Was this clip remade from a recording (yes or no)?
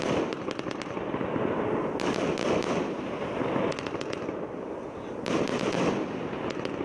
no